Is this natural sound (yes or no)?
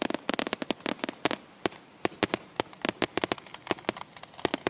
yes